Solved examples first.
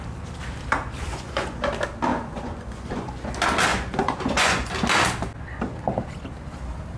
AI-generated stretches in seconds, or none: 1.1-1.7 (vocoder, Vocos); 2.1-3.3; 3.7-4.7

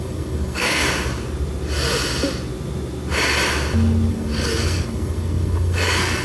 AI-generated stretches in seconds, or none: 0.0-0.8 (codec, SNAC); 4.1-6.2

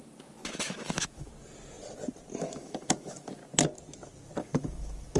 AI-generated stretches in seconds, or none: 0.0-1.3 (autoencoder, DAC-VAE); 2.4-3.4; 4.4-5.2

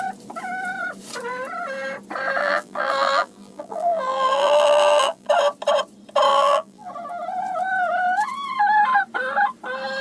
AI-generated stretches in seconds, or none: 2.4-5.3 (vocoder, BigVGAN v2); 6.3-6.9

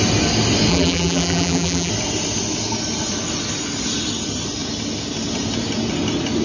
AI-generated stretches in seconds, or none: 0.7-1.9 (vocoder, BigVGAN v2)

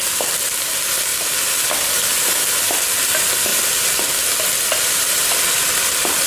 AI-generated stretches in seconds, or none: none

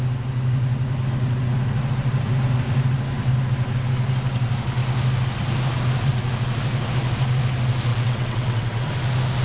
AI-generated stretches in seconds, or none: 7.9-8.9 (vocoder, WaveNeXt)